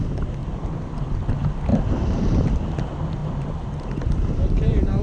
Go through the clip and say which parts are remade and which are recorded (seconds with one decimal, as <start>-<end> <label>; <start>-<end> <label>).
0.0-0.4 recorded; 0.4-0.9 remade; 0.9-1.7 recorded; 1.7-2.6 remade; 2.6-3.2 recorded; 3.2-5.0 remade